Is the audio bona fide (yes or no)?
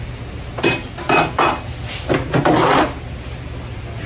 yes